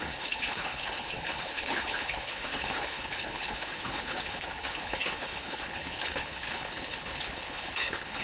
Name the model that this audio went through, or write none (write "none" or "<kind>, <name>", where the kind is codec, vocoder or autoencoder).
codec, HILCodec